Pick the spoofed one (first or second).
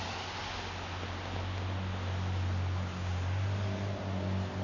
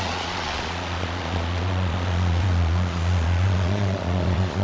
second